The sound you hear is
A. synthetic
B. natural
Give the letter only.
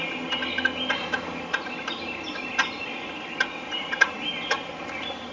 B